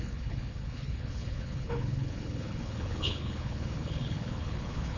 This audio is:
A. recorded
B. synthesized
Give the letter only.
B